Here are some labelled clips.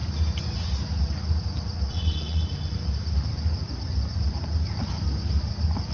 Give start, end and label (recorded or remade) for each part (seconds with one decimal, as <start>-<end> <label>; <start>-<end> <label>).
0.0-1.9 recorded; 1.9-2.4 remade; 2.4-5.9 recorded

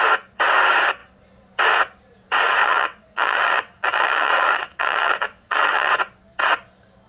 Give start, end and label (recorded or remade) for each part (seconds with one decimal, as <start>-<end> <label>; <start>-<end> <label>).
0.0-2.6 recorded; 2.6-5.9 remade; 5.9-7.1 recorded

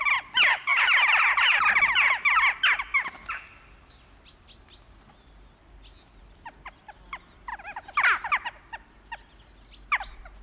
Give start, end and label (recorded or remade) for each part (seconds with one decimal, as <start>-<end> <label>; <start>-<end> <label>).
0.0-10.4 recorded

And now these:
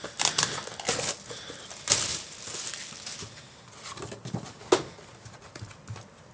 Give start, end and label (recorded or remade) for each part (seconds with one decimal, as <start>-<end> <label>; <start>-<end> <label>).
0.0-6.3 recorded

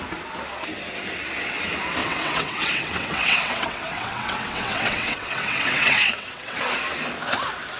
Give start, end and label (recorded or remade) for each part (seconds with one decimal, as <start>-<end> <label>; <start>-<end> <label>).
0.0-2.0 recorded; 2.0-6.6 remade; 6.6-7.8 recorded